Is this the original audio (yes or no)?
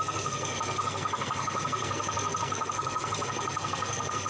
no